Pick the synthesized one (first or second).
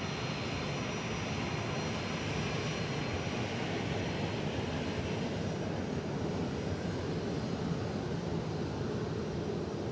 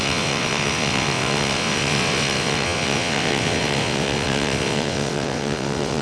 second